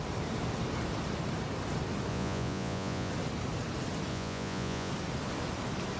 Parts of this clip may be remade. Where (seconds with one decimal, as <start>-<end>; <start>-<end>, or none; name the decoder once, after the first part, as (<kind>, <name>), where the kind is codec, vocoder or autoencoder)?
2.1-3.1 (vocoder, Vocos); 4.1-4.9